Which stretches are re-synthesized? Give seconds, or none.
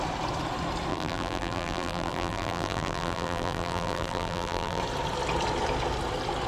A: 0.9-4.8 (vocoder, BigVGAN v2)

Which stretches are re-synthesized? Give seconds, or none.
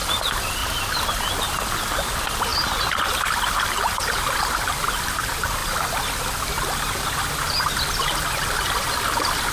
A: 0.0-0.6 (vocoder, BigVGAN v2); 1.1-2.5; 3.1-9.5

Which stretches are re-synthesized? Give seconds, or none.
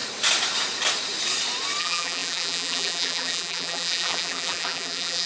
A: 1.8-5.3 (vocoder, BigVGAN v2)